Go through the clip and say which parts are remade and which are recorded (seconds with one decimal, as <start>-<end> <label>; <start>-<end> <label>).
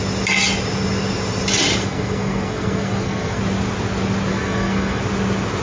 0.0-1.8 recorded; 1.8-3.4 remade; 3.4-4.3 recorded; 4.3-5.0 remade; 5.0-5.6 recorded